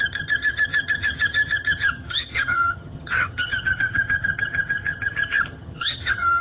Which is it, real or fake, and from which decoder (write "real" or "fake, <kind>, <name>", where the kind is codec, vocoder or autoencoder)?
fake, vocoder, HiFi-GAN